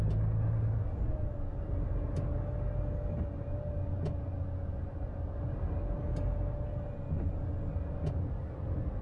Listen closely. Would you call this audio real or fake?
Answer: real